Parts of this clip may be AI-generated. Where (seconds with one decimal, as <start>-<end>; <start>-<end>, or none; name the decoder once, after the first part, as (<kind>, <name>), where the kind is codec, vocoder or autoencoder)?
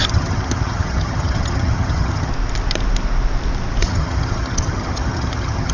0.0-2.3 (vocoder, HiFi-GAN); 3.8-5.7